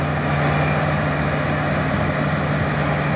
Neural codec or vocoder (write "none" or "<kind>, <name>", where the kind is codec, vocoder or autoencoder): none